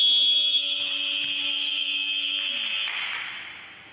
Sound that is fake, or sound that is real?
real